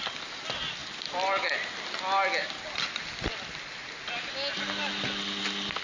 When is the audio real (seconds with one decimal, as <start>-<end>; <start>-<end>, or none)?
0.0-5.8